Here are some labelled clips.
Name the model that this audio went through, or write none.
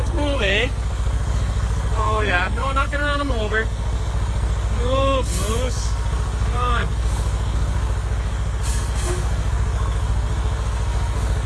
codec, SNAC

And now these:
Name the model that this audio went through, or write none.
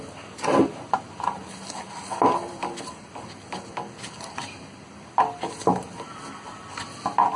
none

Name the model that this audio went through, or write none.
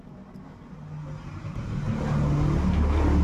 none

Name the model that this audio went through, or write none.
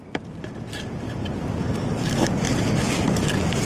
none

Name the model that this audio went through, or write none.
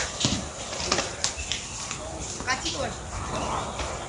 none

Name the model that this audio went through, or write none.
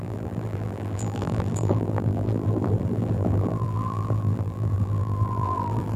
vocoder, BigVGAN v2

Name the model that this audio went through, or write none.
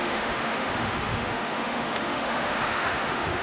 autoencoder, DAC-VAE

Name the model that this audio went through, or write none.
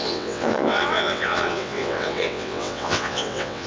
vocoder, WaveNeXt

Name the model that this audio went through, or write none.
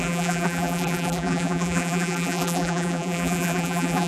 vocoder, BigVGAN v2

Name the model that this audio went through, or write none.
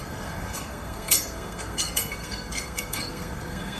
codec, SNAC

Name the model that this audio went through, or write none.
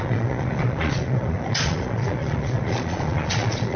vocoder, Vocos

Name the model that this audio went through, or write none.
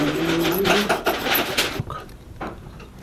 vocoder, BigVGAN v2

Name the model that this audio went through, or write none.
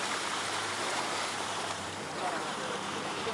vocoder, BigVGAN v2